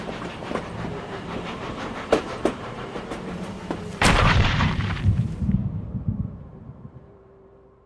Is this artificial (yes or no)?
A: yes